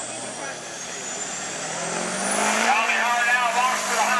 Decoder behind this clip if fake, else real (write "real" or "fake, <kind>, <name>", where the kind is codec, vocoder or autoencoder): real